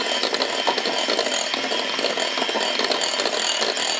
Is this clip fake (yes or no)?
no